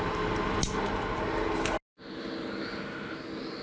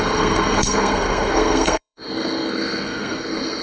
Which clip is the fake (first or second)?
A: second